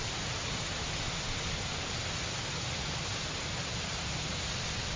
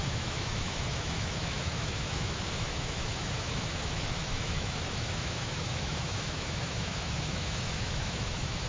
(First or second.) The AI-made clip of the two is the second